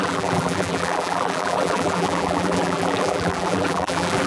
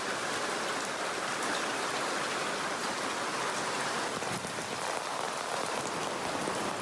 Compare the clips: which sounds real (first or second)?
second